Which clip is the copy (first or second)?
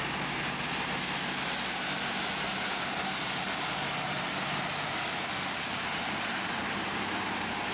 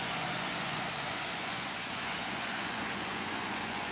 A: second